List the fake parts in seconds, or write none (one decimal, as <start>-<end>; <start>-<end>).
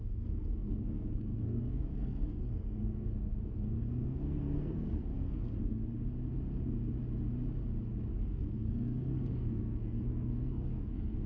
0.0-5.8; 8.2-11.3